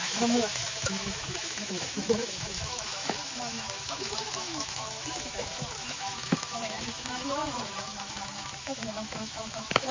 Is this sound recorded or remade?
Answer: remade